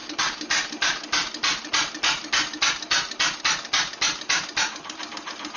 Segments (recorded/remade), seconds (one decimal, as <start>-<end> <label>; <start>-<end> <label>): 0.0-5.6 recorded